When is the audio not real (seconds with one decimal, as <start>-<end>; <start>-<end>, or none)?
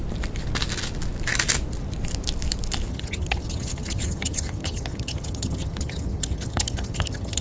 2.9-7.4